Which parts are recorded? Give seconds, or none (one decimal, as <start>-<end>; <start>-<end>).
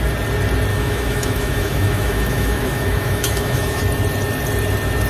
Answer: 0.0-0.7; 3.8-5.1